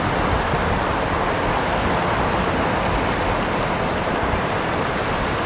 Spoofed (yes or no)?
no